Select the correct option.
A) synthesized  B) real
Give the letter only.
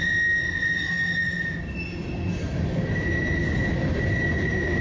B